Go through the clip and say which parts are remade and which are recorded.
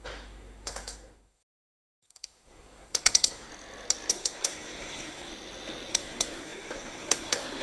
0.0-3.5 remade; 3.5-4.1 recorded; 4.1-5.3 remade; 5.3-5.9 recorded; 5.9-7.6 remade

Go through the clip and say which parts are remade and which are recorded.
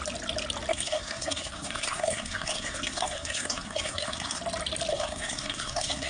0.0-0.7 recorded; 0.7-4.4 remade; 4.4-4.9 recorded; 4.9-6.1 remade